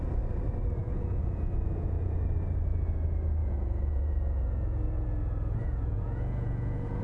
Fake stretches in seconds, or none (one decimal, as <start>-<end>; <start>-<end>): 0.8-2.2; 3.4-7.0

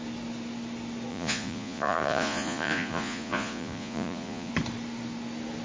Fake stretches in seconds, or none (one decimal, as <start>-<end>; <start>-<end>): 1.1-4.5

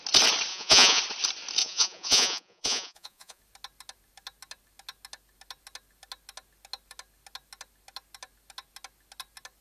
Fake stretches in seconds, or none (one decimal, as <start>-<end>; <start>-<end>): 0.5-1.0; 1.6-3.4